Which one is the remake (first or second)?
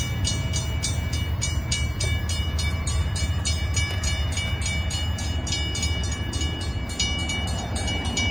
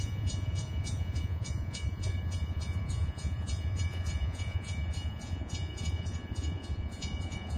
second